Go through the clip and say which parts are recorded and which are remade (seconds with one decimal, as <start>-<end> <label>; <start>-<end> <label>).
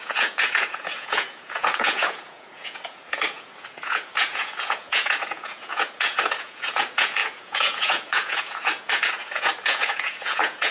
0.0-10.7 remade